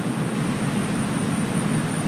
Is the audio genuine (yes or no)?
yes